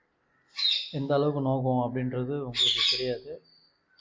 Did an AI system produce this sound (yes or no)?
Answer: no